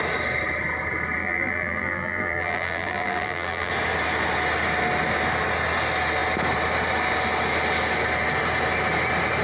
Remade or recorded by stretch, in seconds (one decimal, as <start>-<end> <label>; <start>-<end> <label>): 0.0-1.2 recorded; 1.2-3.7 remade; 3.7-9.4 recorded